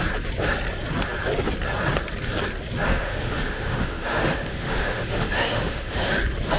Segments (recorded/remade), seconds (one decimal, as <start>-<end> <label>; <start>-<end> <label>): 0.0-2.9 recorded; 2.9-6.1 remade; 6.1-6.6 recorded